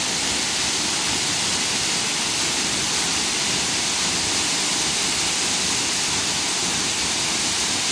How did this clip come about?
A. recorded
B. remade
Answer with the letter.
A